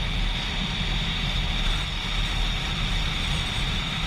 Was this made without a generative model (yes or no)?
yes